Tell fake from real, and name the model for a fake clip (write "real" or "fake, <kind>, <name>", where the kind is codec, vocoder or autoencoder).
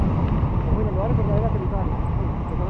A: real